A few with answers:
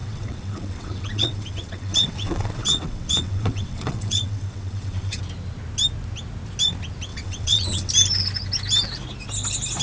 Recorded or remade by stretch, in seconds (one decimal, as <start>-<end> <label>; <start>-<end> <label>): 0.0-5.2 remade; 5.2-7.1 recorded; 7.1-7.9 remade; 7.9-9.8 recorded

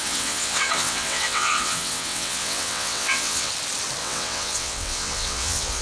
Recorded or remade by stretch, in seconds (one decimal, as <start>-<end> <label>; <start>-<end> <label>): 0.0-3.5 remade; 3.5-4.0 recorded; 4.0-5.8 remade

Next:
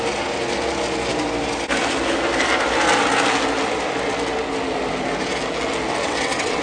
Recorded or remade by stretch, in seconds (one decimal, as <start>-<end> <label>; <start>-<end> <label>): 0.0-6.0 recorded; 6.0-6.6 remade